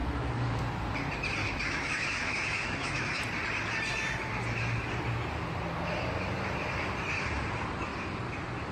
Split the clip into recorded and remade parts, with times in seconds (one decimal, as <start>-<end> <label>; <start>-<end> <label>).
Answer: 0.0-0.6 remade; 0.6-1.4 recorded; 1.4-3.2 remade; 3.2-8.7 recorded